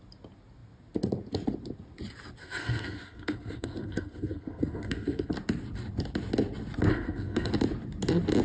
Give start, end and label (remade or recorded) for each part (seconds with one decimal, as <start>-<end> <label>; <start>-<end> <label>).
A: 0.0-2.4 recorded; 2.4-5.3 remade; 5.3-6.9 recorded; 6.9-7.5 remade; 7.5-8.4 recorded